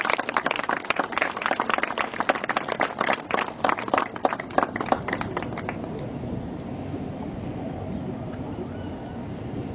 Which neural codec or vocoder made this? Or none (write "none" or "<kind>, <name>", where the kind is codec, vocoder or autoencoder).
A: none